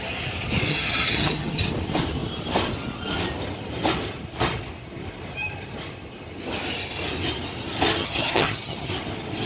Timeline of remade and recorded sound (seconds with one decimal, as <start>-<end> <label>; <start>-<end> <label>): 0.0-0.7 recorded; 0.7-1.6 remade; 1.6-8.0 recorded; 8.0-8.9 remade; 8.9-9.5 recorded